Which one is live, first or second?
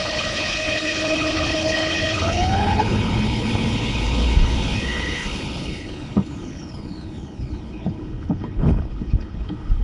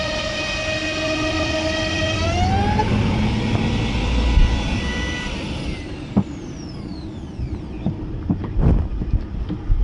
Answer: second